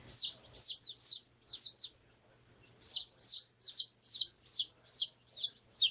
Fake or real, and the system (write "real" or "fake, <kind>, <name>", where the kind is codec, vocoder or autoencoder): fake, vocoder, BigVGAN v2